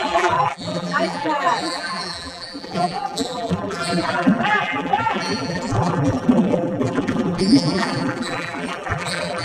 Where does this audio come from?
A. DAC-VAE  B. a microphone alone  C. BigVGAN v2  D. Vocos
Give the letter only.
C